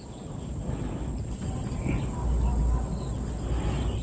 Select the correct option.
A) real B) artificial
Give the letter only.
A